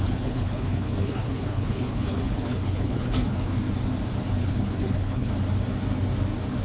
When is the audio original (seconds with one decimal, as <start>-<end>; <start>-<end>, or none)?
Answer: 3.6-4.4; 5.3-6.6